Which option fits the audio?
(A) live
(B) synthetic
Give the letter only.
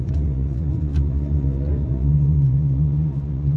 B